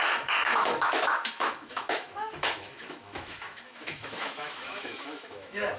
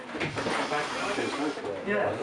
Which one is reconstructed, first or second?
first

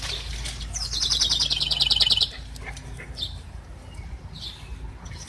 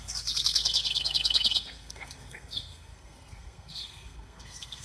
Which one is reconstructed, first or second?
second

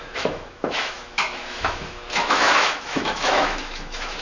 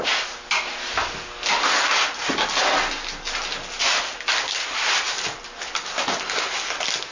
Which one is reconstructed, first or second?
first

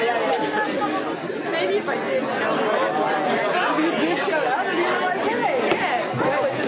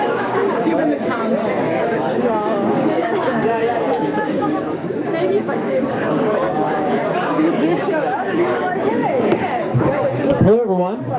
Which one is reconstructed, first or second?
second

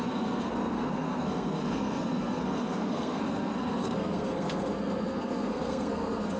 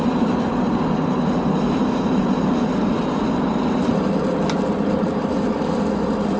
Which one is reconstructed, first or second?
first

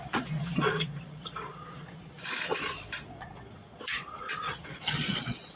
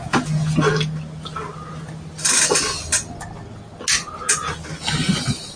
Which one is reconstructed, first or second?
first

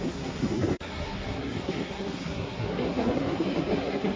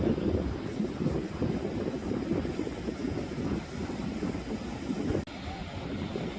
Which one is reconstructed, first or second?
first